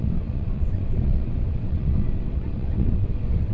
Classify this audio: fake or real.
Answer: fake